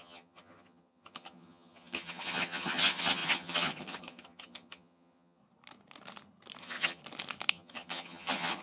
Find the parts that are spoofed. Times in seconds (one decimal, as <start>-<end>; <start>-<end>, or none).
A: 0.0-5.4; 6.6-7.0; 7.5-8.6

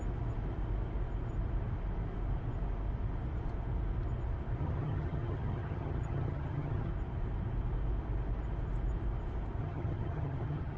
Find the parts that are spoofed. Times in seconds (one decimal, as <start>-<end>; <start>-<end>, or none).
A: 4.6-6.9; 9.6-10.8

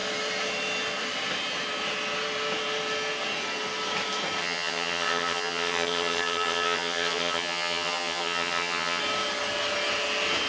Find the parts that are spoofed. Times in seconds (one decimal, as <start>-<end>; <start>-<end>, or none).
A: 4.4-9.0

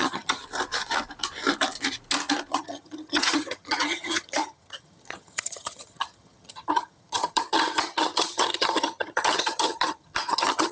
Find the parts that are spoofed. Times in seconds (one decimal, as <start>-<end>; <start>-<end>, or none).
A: 0.0-0.4; 2.5-10.7

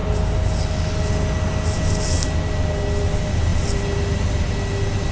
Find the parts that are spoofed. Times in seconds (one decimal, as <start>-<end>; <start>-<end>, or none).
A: none

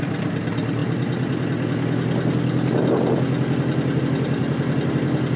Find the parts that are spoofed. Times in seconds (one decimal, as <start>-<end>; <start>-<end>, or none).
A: none